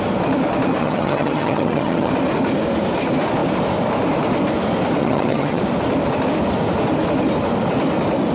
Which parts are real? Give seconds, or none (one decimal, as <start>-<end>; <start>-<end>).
0.0-0.8; 2.1-5.0; 5.6-8.3